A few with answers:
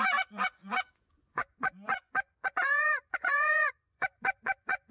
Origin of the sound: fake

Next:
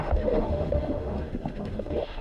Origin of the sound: fake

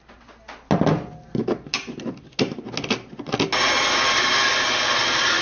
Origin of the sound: real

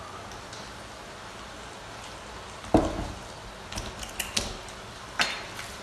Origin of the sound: real